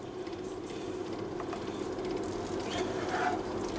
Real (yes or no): yes